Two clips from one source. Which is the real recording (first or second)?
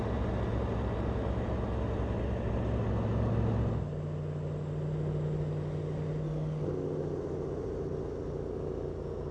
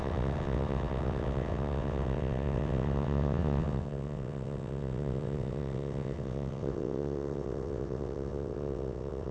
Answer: first